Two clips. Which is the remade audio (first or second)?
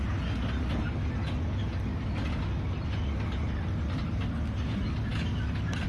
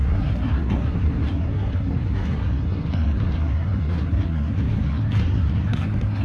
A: second